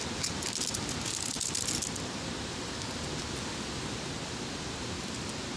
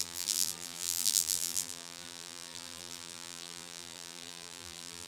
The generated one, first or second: second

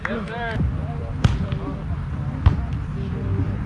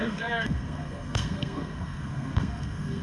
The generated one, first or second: second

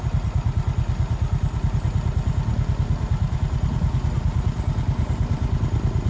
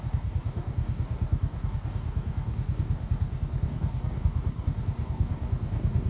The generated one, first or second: second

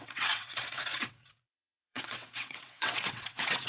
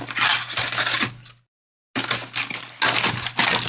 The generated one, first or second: first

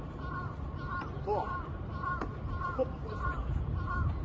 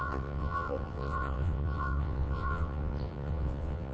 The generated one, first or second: second